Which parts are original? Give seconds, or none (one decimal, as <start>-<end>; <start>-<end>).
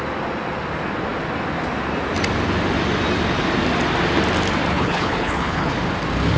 0.0-4.7; 5.7-6.4